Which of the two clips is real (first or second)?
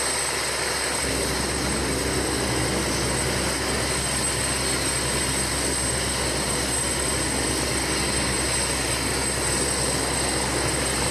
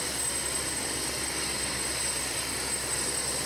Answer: first